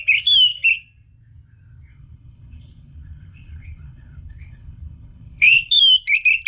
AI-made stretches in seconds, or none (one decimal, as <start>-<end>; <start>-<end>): 1.9-5.8